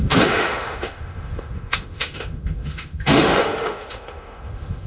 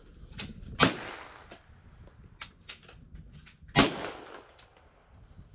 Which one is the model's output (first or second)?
first